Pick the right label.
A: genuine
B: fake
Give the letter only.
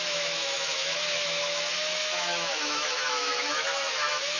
B